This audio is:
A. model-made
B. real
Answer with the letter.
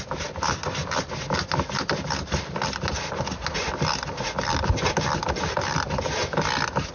B